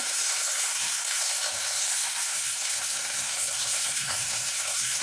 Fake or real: fake